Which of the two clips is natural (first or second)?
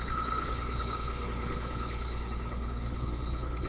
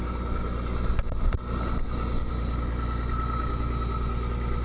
second